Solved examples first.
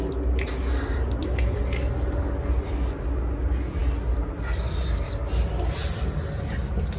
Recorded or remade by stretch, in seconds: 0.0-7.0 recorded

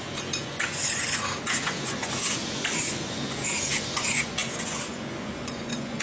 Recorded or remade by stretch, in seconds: 0.0-6.0 remade

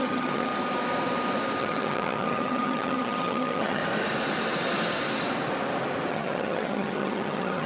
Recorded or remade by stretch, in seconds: 0.0-0.5 remade; 0.5-1.6 recorded; 1.6-3.8 remade; 3.8-6.1 recorded; 6.1-7.7 remade

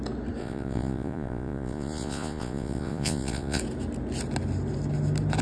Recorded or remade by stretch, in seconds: 0.0-0.4 recorded; 0.4-3.6 remade; 3.6-5.4 recorded

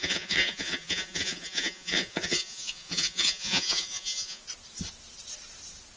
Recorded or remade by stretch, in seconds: 0.0-4.4 remade; 4.4-6.0 recorded

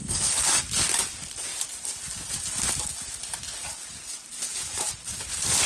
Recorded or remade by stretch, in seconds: 0.0-0.6 remade; 0.6-5.7 recorded